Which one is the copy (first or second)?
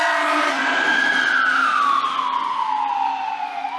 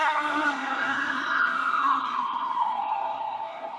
second